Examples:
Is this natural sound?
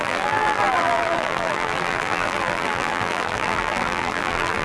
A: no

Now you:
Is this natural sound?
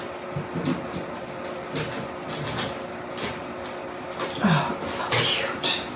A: yes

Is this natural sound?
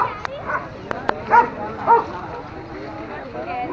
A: yes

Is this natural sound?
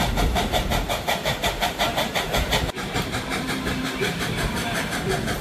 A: no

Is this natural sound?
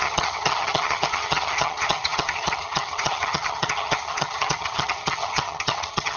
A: no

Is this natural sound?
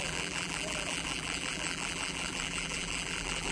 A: no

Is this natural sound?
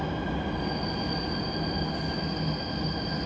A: yes